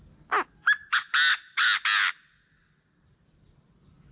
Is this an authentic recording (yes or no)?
yes